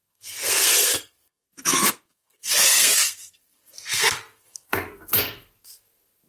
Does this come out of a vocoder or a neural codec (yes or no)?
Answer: yes